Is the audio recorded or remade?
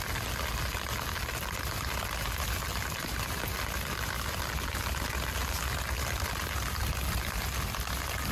recorded